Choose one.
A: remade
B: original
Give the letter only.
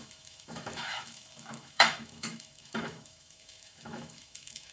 A